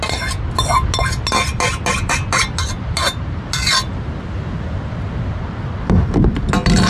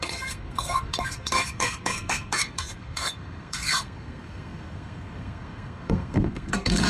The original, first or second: first